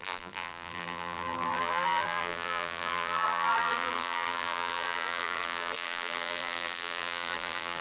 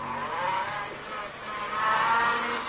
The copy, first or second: first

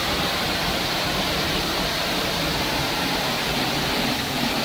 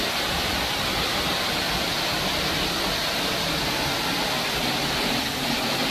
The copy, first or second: first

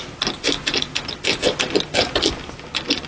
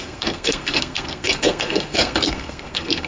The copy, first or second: second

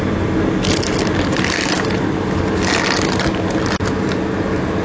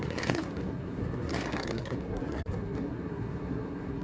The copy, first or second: second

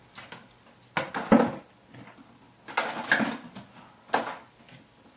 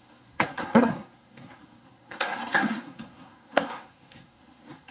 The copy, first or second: second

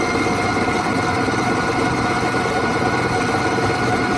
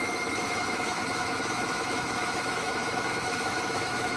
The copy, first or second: second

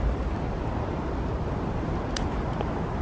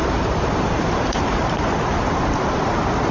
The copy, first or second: second